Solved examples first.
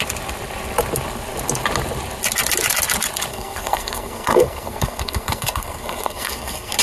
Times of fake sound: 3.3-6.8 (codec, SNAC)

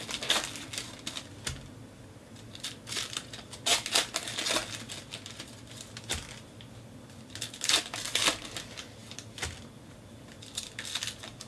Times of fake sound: none

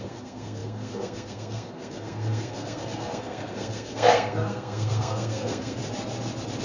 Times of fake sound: 0.0-5.8 (codec, SNAC)

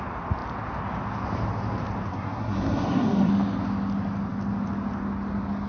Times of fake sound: 2.1-3.3 (codec, SNAC)

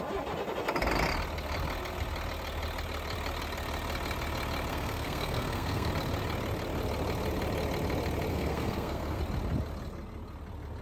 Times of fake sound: 4.7-5.9 (codec, SNAC); 8.3-9.2

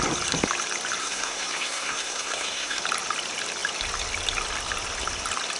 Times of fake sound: 1.0-2.8 (codec, SNAC)